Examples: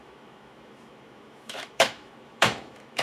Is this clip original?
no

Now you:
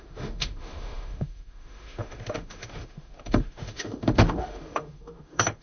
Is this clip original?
no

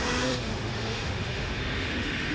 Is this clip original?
no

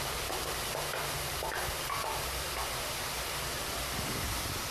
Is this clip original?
yes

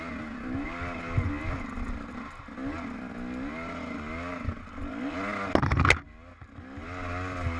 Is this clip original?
yes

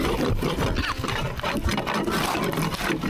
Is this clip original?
yes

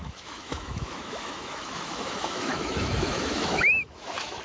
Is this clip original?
no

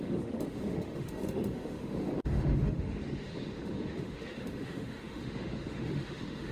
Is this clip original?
no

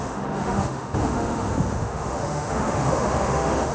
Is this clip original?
no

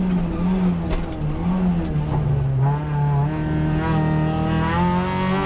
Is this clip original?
yes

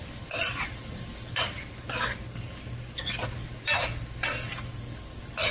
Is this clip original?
yes